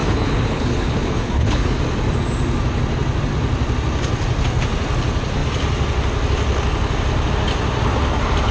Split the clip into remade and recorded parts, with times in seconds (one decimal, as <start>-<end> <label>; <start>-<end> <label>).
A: 0.0-1.8 remade; 1.8-8.5 recorded